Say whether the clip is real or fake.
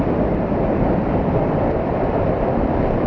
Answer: fake